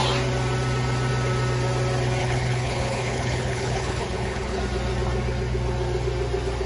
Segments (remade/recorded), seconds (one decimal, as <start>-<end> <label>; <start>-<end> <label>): 0.0-2.2 recorded; 2.2-4.6 remade; 4.6-6.7 recorded